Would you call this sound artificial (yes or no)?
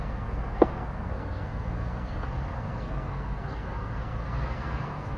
yes